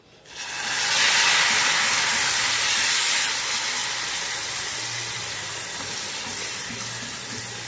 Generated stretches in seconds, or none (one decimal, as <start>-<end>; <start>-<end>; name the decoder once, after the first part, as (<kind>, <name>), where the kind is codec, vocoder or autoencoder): none